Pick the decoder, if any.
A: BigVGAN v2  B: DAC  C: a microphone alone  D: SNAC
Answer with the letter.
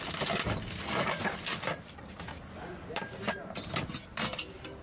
C